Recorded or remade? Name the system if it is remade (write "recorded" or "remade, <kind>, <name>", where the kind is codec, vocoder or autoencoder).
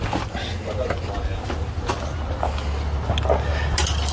recorded